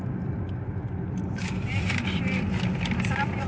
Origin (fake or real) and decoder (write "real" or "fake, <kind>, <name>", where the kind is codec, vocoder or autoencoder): fake, vocoder, BigVGAN v2